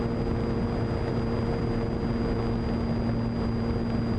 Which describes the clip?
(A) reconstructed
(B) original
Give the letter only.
B